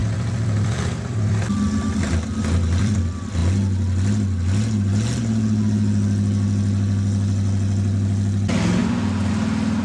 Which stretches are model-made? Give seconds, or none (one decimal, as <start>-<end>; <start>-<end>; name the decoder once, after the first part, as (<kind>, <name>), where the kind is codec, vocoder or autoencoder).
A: 0.0-3.0 (vocoder, BigVGAN v2); 8.8-9.3